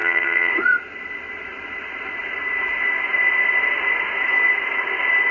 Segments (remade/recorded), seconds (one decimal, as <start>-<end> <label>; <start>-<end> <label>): 0.0-0.5 remade; 0.5-5.3 recorded